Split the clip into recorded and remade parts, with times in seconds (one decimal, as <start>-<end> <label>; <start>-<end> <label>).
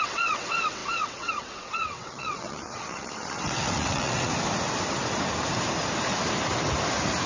0.0-4.3 remade; 4.3-7.3 recorded